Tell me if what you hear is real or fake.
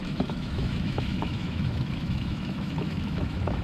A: fake